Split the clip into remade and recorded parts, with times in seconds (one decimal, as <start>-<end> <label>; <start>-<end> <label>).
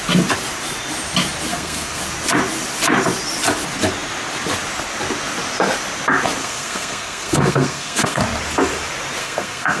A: 0.0-1.5 recorded; 1.5-2.0 remade; 2.0-6.4 recorded; 6.4-8.2 remade; 8.2-9.2 recorded; 9.2-9.8 remade